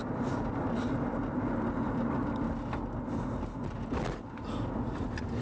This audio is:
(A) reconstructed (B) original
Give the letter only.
B